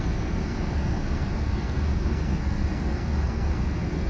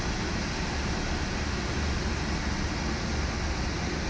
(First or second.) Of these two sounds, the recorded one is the second